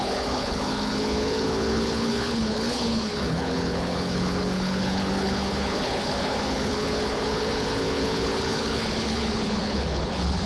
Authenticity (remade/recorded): remade